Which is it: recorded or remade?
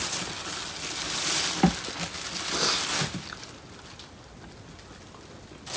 recorded